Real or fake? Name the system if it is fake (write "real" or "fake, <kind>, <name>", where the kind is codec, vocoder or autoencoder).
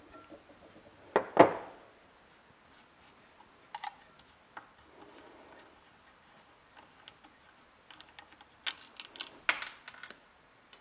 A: real